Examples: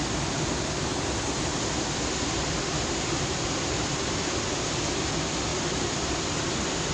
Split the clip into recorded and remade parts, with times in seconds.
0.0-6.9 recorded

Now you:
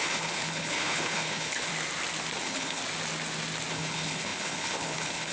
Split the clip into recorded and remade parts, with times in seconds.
0.0-1.7 remade; 1.7-2.4 recorded; 2.4-2.8 remade; 2.8-3.7 recorded; 3.7-5.3 remade